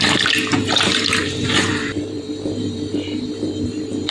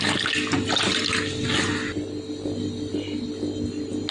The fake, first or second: first